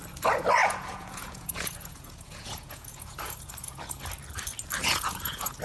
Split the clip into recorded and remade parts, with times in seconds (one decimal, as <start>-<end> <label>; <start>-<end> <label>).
0.0-0.6 recorded; 0.6-4.0 remade; 4.0-4.8 recorded; 4.8-5.6 remade

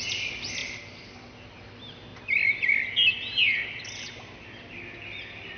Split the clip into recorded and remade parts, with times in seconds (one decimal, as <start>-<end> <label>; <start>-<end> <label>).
0.0-5.6 recorded

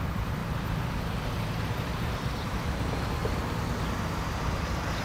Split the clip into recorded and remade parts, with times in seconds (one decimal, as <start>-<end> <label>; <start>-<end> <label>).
0.0-3.2 remade; 3.2-4.3 recorded; 4.3-5.0 remade

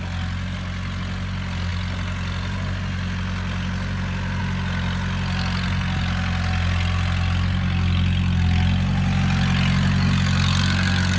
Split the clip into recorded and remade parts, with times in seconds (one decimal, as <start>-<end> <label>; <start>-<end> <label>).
0.0-11.2 recorded

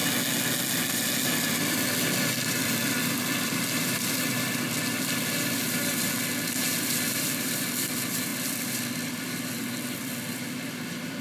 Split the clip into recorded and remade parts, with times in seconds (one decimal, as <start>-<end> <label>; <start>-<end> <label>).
0.0-0.9 recorded; 0.9-11.2 remade

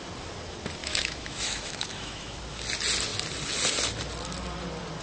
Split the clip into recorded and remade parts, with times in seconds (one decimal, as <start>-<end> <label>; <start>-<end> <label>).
0.0-0.8 recorded; 0.8-2.4 remade; 2.4-5.0 recorded